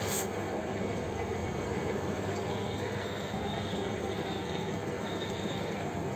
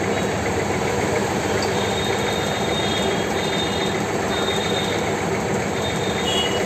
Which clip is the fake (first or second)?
first